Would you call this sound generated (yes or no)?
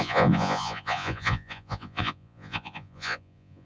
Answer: yes